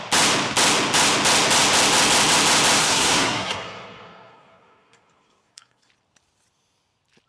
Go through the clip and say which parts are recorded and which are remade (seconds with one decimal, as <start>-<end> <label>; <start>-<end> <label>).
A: 0.0-2.8 recorded; 2.8-5.9 remade; 5.9-7.3 recorded